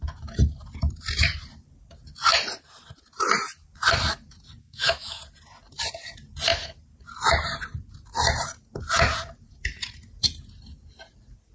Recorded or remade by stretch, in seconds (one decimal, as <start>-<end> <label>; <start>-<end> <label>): 0.0-4.6 recorded; 4.6-5.2 remade; 5.2-11.5 recorded